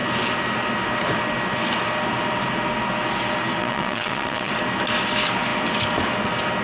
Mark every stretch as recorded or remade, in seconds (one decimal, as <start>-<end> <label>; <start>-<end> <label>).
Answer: 0.0-3.6 recorded; 3.6-4.5 remade; 4.5-6.6 recorded